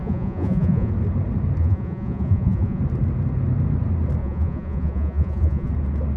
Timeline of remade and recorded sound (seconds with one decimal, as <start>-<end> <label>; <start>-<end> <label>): 0.0-0.9 remade; 0.9-1.6 recorded; 1.6-2.8 remade; 2.8-4.2 recorded; 4.2-5.7 remade; 5.7-6.2 recorded

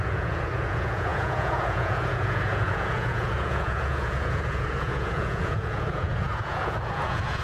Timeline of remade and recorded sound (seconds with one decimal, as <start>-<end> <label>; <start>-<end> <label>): 0.0-7.4 remade

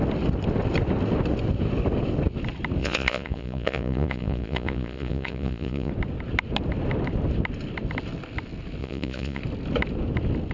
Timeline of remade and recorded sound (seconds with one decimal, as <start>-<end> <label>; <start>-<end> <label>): 0.0-2.8 recorded; 2.8-5.9 remade; 5.9-8.8 recorded; 8.8-9.4 remade; 9.4-10.5 recorded

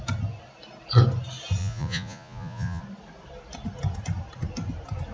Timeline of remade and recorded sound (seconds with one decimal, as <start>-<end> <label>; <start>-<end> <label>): 0.0-1.6 recorded; 1.6-2.8 remade; 2.8-5.1 recorded

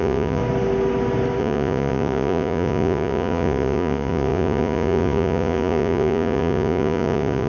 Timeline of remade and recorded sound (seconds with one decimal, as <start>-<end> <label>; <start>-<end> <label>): 0.0-0.4 remade; 0.4-1.4 recorded; 1.4-7.5 remade

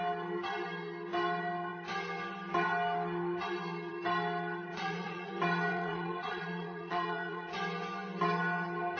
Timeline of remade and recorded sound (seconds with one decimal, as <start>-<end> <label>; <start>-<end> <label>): 0.0-4.7 recorded; 4.7-5.3 remade; 5.3-5.7 recorded; 5.7-7.5 remade; 7.5-9.0 recorded